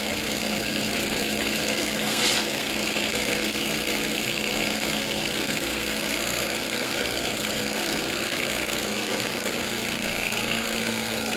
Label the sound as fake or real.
fake